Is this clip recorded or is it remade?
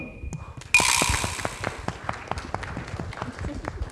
recorded